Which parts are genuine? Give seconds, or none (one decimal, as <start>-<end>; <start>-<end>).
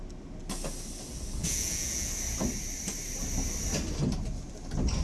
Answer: 0.0-1.4; 2.1-5.0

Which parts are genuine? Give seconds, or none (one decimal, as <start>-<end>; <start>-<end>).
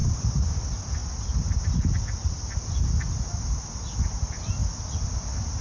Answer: 0.5-5.6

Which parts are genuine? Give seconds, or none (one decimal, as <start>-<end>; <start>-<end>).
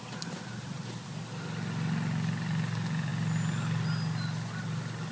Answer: 0.0-5.1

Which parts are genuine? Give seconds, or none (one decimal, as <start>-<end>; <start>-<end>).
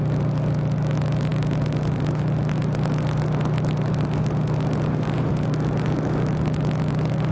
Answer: 0.0-7.3